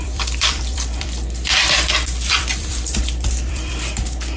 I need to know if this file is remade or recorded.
remade